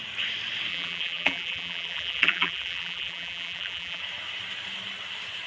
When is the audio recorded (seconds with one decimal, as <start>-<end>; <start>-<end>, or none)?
0.0-0.7; 4.0-5.5